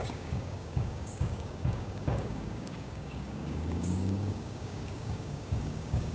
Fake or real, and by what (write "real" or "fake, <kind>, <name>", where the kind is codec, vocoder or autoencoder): fake, codec, DAC